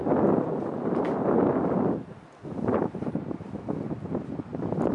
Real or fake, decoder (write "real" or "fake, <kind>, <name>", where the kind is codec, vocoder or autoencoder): fake, vocoder, BigVGAN v2